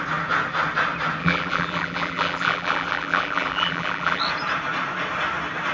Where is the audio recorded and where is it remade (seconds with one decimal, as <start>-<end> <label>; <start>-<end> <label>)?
0.0-1.2 recorded; 1.2-4.2 remade; 4.2-5.7 recorded